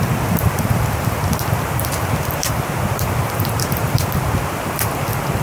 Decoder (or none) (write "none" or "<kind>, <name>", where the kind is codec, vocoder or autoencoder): none